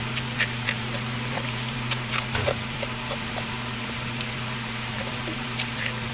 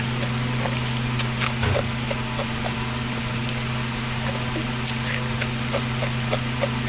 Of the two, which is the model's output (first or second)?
first